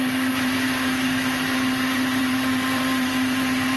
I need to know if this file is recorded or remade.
remade